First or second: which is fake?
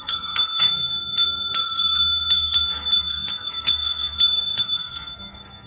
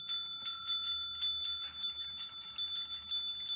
first